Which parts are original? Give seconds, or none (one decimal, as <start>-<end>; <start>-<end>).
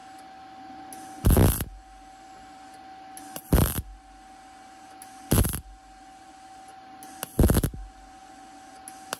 0.0-9.2